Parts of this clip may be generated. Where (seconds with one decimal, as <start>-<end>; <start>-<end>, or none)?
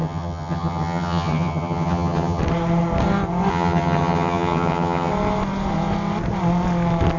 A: 0.0-2.4; 3.5-5.1